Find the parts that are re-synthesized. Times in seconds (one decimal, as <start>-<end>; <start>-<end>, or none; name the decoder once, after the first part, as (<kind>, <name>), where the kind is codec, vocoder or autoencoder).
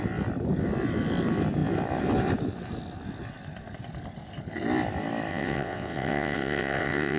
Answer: 5.3-7.2 (vocoder, WaveNeXt)